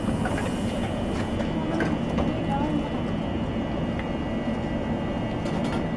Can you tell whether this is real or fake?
real